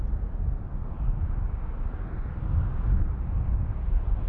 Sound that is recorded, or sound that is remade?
recorded